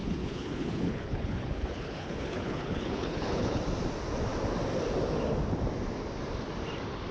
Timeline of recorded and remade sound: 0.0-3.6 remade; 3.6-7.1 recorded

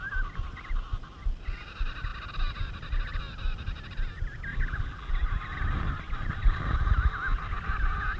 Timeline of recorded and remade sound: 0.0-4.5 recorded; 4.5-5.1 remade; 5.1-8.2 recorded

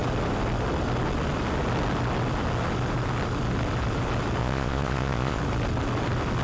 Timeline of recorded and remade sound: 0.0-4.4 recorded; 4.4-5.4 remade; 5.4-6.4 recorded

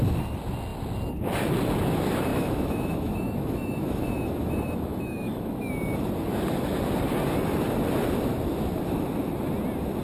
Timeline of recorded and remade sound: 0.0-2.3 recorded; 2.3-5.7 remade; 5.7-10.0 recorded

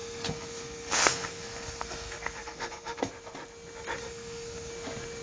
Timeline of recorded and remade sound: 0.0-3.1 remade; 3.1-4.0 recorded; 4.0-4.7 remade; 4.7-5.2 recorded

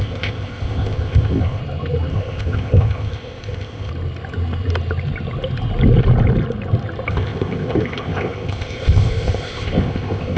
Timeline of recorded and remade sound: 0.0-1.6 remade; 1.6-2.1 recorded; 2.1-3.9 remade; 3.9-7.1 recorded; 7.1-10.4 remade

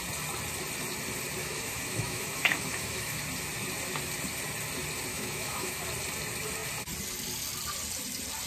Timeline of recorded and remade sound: 0.0-1.4 recorded; 1.4-3.2 remade; 3.2-5.1 recorded; 5.1-5.8 remade; 5.8-8.5 recorded